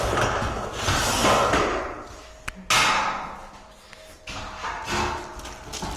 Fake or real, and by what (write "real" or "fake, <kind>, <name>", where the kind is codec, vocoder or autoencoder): real